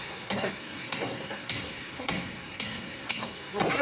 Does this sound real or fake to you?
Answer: fake